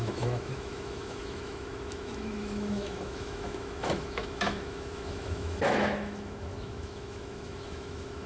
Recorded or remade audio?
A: remade